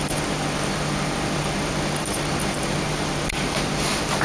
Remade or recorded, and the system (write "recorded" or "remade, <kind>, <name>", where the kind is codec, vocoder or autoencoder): recorded